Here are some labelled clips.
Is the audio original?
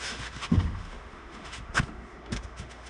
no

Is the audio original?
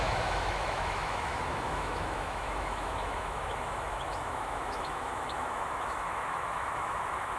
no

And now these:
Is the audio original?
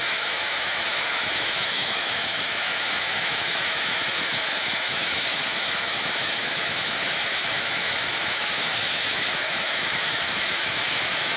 no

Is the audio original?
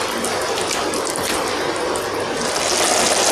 yes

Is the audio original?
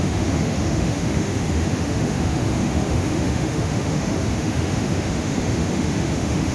no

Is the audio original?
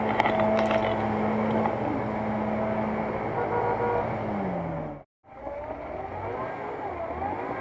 yes